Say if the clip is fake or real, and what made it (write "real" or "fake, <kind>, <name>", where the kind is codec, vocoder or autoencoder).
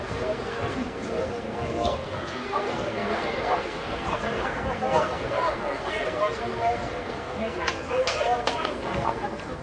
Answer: fake, codec, SNAC